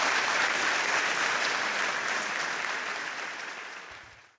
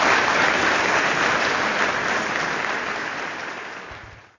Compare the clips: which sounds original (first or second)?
second